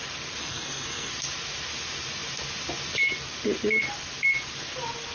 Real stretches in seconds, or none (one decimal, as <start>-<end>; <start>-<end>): 0.0-0.4; 1.1-5.1